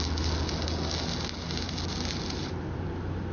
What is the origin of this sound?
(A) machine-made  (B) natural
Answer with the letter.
B